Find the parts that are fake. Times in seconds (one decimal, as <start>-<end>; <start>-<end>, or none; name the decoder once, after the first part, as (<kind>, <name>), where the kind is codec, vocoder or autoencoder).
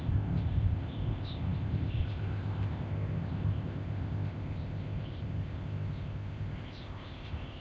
0.0-7.6 (codec, ZipCodec)